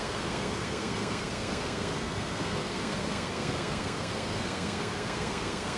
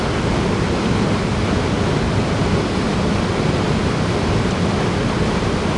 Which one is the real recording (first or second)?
second